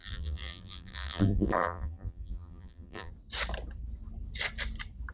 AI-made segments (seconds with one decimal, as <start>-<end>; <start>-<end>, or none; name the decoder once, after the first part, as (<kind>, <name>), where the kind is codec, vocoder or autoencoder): 0.0-3.1 (vocoder, BigVGAN v2)